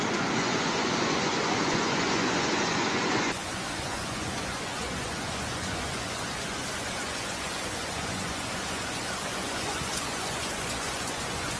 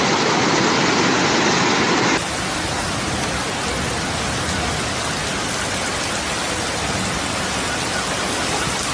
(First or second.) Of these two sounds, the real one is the second